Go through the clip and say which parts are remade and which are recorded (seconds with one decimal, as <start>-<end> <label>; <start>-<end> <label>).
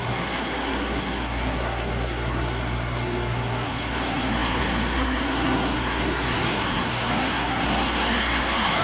0.0-8.8 remade